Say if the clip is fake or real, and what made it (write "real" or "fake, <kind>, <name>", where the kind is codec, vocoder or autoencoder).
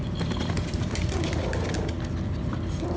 real